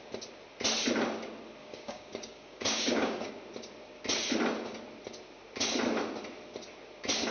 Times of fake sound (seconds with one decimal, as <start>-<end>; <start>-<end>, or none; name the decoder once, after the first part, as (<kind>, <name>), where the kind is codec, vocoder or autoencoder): 1.6-3.3 (codec, DAC)